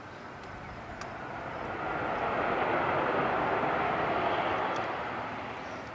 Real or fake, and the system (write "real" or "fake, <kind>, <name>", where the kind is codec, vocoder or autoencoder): real